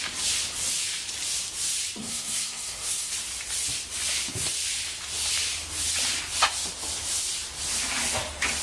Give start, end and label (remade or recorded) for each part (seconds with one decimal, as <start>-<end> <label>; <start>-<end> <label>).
0.0-2.0 recorded; 2.0-3.1 remade; 3.1-8.6 recorded